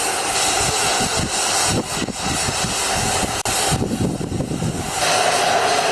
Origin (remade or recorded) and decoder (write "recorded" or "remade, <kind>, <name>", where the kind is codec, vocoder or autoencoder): recorded